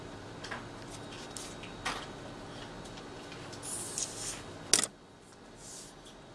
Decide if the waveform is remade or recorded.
recorded